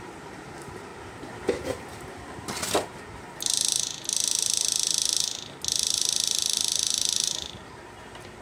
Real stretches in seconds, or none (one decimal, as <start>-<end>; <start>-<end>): 0.9-5.9